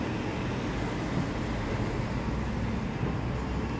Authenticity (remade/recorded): recorded